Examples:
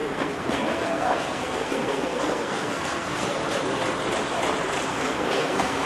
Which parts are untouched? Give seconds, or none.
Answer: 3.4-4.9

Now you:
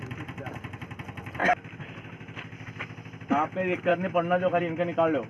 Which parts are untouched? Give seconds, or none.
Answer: 0.0-3.9; 4.6-5.3

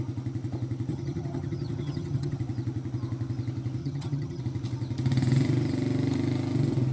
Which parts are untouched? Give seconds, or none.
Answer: 0.0-0.9; 2.4-3.8; 4.4-6.9

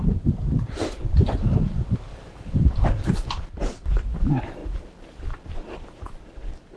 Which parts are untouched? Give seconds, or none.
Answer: 0.0-2.1; 3.9-4.6; 5.2-6.8

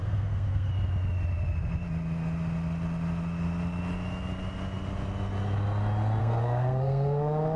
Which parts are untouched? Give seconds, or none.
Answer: 0.7-6.2

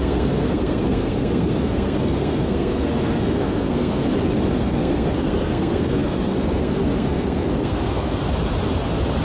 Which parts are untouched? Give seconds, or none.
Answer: 4.0-4.5; 8.2-9.2

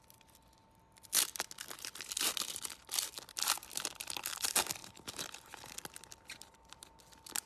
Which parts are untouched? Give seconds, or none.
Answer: 0.0-7.5